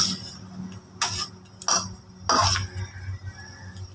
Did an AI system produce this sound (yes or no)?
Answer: no